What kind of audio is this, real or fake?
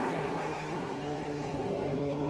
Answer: fake